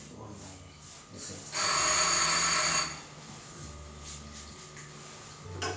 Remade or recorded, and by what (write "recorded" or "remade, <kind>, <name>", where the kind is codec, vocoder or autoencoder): recorded